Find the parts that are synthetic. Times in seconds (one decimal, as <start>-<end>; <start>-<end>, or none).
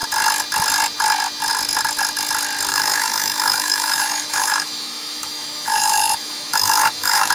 2.7-7.3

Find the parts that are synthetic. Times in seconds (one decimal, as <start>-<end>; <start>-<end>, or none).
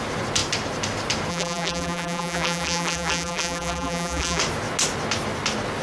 1.3-4.4